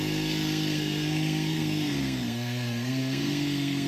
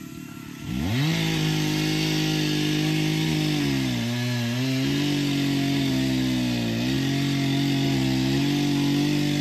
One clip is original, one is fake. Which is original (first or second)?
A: second